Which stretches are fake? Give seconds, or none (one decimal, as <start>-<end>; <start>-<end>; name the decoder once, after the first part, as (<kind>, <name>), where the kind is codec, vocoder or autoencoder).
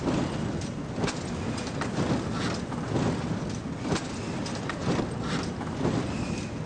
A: none